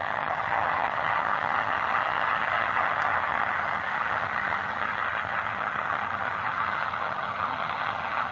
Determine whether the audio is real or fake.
fake